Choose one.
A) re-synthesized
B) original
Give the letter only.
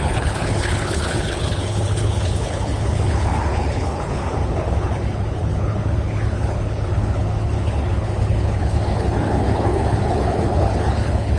A